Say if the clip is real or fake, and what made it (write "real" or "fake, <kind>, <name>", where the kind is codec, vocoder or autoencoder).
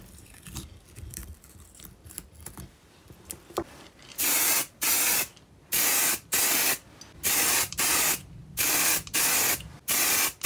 fake, vocoder, BigVGAN v2